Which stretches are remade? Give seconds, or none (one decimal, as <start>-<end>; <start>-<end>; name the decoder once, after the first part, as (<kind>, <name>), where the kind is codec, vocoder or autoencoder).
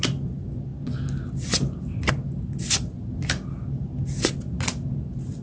none